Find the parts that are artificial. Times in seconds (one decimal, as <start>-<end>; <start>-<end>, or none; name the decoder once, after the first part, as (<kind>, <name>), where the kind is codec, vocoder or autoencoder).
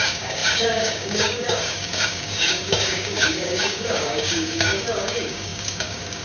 0.0-6.2 (codec, DAC)